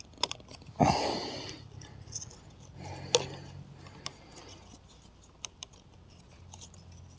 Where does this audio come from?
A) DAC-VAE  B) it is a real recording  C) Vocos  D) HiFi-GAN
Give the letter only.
B